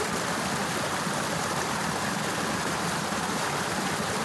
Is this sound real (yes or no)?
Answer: yes